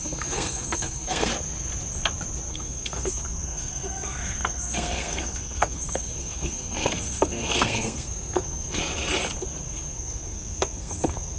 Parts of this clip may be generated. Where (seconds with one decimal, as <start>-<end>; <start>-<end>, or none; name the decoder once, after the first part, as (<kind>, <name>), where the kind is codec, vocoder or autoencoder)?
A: 0.0-1.3 (codec, SNAC); 2.5-8.8; 9.6-11.4